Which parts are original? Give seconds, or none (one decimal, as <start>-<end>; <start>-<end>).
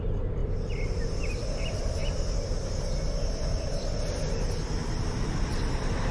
0.0-6.1